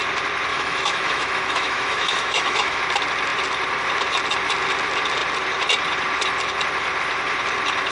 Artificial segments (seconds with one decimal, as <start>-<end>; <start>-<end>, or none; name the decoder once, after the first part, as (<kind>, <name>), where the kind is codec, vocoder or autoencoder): 0.5-2.8 (autoencoder, DAC-VAE)